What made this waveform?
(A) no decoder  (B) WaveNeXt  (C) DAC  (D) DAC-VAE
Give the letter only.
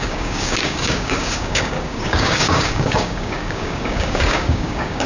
C